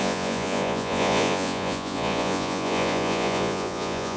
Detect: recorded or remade remade